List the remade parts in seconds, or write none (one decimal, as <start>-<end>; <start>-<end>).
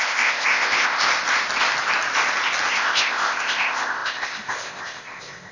0.0-1.1; 2.7-5.5